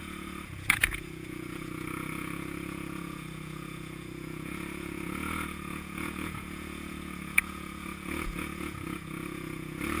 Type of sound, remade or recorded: remade